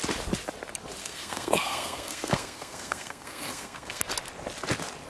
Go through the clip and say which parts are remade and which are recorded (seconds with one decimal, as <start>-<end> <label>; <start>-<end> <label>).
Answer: 0.0-1.0 recorded; 1.0-4.0 remade; 4.0-5.1 recorded